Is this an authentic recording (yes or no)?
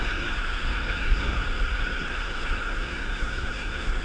no